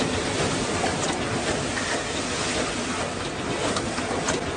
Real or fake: real